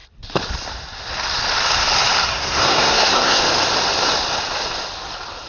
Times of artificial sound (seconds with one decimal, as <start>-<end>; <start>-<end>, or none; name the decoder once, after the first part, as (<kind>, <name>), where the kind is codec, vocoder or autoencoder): 2.3-3.4 (codec, SNAC)